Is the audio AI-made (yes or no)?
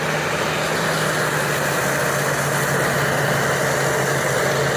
no